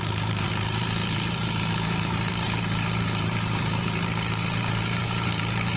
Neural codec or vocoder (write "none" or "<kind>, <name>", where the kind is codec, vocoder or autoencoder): vocoder, BigVGAN v2